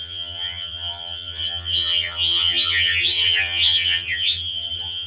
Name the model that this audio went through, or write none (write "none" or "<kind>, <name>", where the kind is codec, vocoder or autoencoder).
vocoder, HiFi-GAN